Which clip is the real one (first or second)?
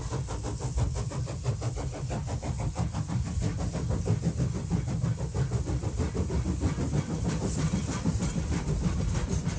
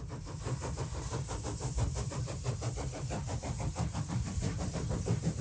first